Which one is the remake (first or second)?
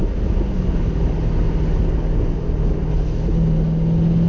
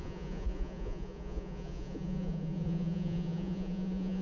second